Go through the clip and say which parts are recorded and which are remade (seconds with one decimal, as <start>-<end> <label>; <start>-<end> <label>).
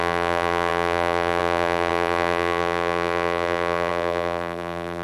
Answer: 0.0-5.0 remade